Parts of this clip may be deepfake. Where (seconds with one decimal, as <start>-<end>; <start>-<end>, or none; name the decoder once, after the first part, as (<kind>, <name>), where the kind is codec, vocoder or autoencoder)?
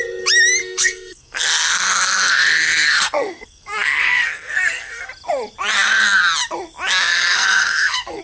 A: 0.6-5.1 (codec, SNAC); 7.1-8.2